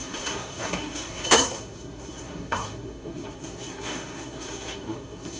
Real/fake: fake